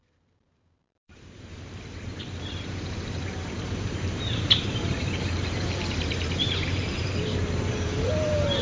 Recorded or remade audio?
remade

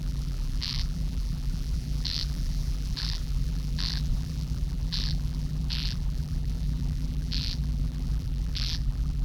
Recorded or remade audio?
remade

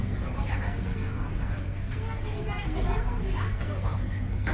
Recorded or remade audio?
remade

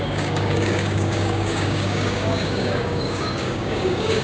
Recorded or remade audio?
remade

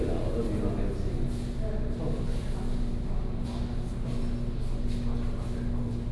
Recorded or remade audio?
recorded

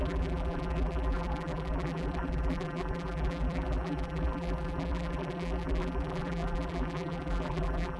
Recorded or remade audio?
remade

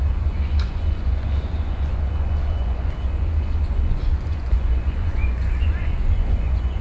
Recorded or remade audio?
remade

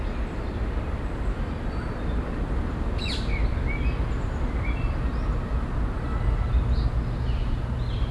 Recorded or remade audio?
recorded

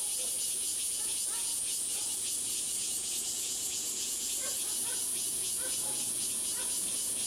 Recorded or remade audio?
remade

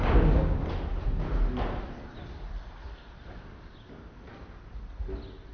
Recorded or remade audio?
recorded